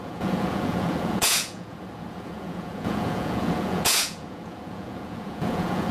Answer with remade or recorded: remade